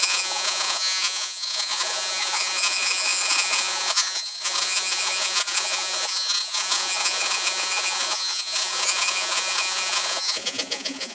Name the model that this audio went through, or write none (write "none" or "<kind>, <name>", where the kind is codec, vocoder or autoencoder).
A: vocoder, Vocos